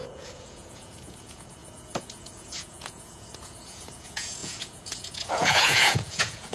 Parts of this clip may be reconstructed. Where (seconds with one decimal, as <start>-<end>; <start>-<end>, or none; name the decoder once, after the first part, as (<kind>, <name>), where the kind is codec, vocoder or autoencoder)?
0.0-6.5 (vocoder, Vocos)